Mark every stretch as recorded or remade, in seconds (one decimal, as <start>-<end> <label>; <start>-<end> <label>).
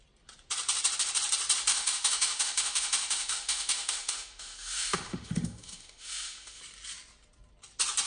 0.0-1.7 recorded; 1.7-6.6 remade; 6.6-8.1 recorded